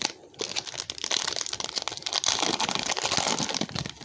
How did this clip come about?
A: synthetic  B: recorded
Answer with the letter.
B